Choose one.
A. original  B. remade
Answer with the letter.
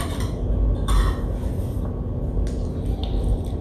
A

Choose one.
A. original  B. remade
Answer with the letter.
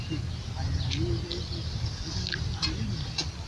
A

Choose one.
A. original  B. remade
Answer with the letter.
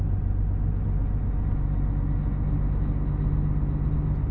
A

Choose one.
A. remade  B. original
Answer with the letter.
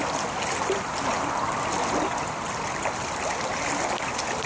B